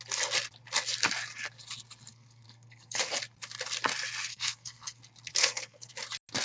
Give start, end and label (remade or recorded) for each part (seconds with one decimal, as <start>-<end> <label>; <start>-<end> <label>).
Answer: 0.0-2.1 recorded; 2.1-3.1 remade; 3.1-4.3 recorded; 4.3-5.0 remade; 5.0-5.4 recorded; 5.4-5.9 remade; 5.9-6.4 recorded